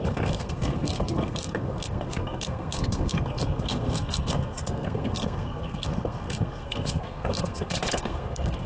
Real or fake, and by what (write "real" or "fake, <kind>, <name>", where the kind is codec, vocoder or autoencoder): fake, codec, SNAC